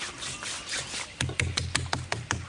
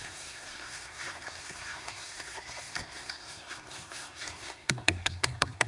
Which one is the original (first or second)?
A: first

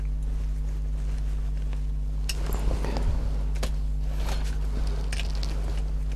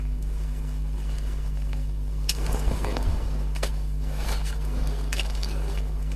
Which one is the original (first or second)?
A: first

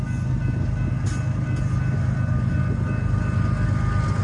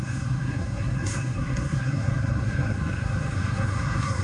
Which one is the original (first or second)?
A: first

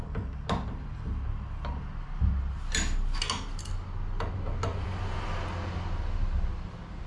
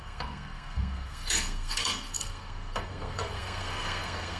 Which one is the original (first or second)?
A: first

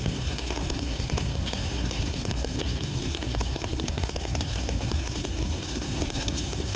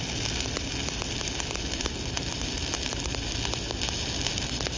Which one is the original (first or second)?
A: second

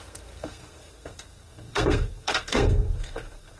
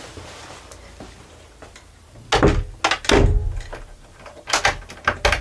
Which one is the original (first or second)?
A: second